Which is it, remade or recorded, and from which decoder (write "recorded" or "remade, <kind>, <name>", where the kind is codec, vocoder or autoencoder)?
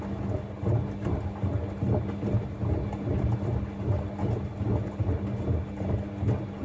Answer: recorded